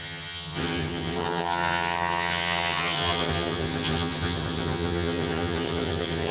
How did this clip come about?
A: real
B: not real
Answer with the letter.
B